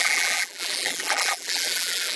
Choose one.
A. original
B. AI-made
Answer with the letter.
B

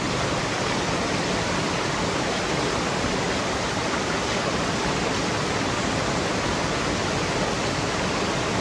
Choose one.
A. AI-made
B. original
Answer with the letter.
B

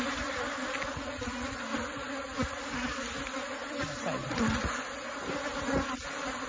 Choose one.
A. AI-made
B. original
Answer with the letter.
B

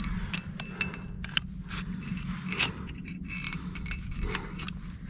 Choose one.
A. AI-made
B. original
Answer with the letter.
B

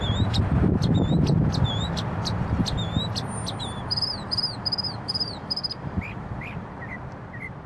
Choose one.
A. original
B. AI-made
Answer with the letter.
B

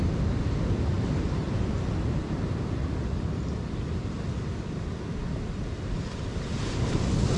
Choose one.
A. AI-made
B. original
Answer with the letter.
B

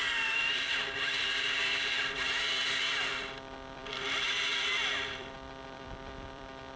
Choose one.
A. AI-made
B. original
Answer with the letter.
A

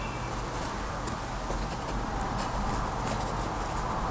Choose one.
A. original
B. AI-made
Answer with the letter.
A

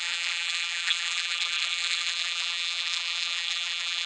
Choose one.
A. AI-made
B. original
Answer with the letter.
A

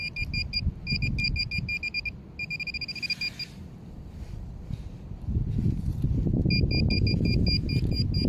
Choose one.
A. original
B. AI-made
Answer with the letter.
A